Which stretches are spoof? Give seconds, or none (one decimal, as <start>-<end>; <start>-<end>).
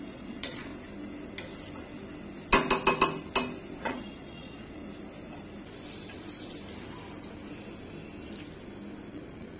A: 0.0-0.7; 3.8-4.8; 9.1-9.6